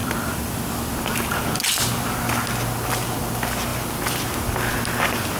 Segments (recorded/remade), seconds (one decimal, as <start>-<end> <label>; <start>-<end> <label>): 0.0-0.6 remade; 0.6-5.4 recorded